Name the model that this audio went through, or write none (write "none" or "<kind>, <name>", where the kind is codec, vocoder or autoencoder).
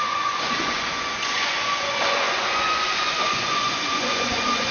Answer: vocoder, Vocos